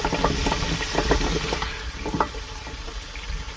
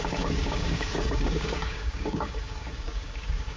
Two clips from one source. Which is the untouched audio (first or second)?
first